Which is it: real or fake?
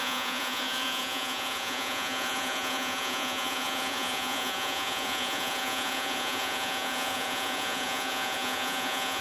fake